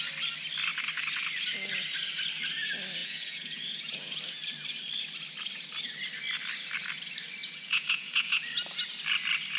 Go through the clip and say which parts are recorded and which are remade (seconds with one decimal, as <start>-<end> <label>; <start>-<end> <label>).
0.0-3.0 recorded; 3.0-4.2 remade; 4.2-7.4 recorded; 7.4-8.4 remade; 8.4-9.6 recorded